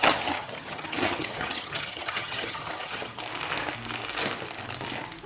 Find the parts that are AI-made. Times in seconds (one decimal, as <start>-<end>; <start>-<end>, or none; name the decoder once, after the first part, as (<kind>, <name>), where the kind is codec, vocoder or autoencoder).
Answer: 0.0-3.2 (vocoder, HiFi-GAN)

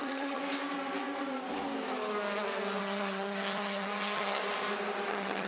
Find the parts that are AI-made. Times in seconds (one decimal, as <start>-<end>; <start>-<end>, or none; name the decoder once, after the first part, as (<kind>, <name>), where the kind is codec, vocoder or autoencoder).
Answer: 0.0-0.4 (vocoder, HiFi-GAN); 2.8-4.4; 5.1-5.5